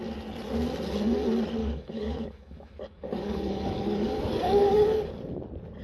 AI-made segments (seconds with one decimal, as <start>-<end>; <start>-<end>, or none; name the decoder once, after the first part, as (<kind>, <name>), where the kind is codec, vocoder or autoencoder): 1.6-5.1 (codec, DAC)